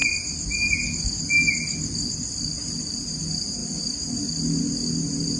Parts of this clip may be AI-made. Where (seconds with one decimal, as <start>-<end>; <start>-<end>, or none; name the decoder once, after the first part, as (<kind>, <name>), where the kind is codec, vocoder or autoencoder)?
0.0-3.2 (vocoder, BigVGAN v2); 3.6-4.6